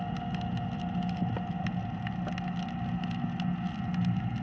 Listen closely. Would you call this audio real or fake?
real